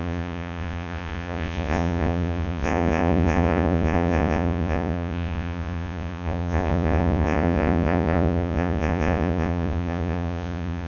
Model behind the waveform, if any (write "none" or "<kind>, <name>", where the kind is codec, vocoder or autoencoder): vocoder, Vocos